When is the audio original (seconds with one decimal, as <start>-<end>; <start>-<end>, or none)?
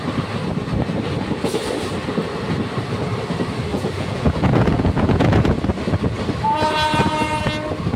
0.0-3.7; 5.6-8.0